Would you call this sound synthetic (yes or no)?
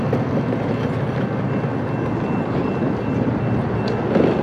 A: no